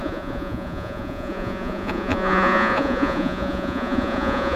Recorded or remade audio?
remade